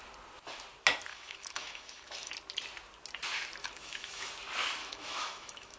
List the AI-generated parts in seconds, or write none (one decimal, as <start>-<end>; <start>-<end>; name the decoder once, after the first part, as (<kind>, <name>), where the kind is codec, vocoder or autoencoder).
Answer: 1.1-2.3 (autoencoder, DAC-VAE); 3.6-4.3; 4.8-5.8